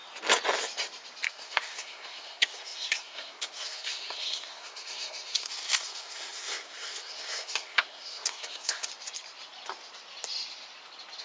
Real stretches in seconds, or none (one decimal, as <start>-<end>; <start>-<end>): 0.0-1.3; 8.9-11.2